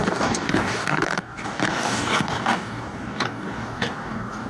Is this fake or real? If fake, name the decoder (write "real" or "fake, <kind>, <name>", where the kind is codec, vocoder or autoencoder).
fake, codec, DAC